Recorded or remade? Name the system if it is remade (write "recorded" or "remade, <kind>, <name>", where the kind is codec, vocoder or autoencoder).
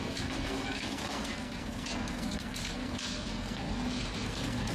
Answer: remade, codec, SNAC